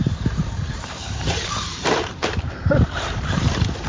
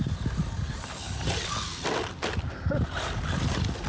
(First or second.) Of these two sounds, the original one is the second